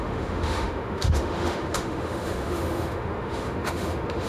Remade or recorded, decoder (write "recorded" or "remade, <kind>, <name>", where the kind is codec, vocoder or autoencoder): remade, autoencoder, DAC-VAE